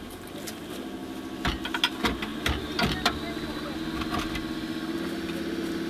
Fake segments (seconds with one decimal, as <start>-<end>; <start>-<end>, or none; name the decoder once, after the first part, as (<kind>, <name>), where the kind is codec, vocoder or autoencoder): none